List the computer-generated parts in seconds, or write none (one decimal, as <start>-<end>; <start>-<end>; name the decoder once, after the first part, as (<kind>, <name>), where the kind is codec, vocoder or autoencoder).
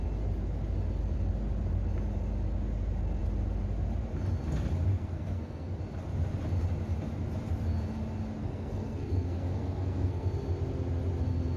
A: 4.9-5.8 (codec, SNAC); 8.4-10.3